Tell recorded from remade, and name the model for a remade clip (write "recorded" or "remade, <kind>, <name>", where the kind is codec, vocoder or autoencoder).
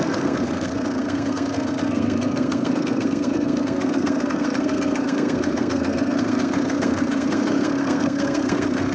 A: remade, codec, SNAC